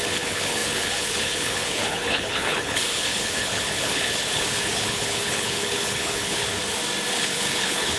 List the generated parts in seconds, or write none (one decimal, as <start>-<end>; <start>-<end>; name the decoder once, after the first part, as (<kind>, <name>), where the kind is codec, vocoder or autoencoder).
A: 0.0-6.5 (codec, HILCodec); 7.1-8.0